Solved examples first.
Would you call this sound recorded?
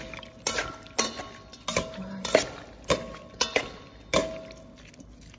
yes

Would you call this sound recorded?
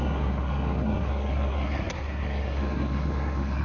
no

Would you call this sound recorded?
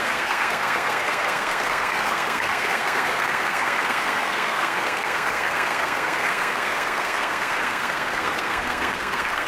no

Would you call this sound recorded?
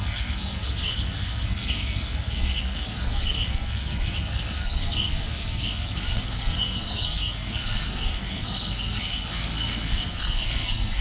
no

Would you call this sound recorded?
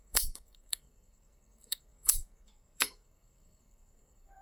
no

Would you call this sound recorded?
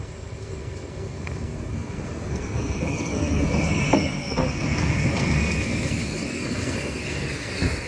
no